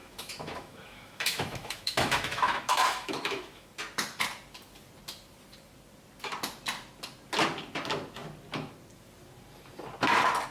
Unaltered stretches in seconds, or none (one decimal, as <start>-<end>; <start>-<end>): 3.7-10.5